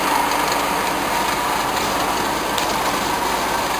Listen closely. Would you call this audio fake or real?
real